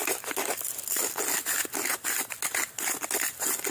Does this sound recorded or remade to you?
recorded